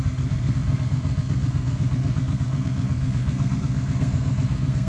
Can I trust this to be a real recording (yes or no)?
no